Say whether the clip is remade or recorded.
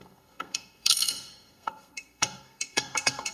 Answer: remade